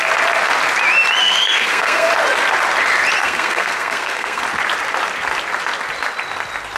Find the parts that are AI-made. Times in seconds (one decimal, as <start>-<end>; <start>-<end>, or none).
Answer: 1.2-2.1; 3.2-4.4